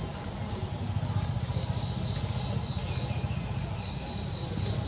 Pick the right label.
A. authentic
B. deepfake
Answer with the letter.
A